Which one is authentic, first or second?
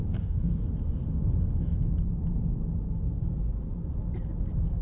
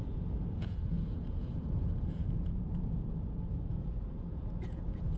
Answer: first